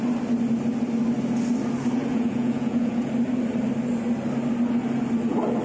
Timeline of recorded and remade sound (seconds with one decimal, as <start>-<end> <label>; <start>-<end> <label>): 0.0-2.1 recorded; 2.1-3.1 remade; 3.1-5.6 recorded